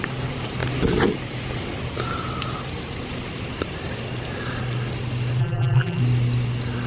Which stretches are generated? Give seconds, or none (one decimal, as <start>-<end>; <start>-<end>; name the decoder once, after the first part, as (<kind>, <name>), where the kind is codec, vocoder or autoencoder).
5.4-6.0 (vocoder, BigVGAN v2)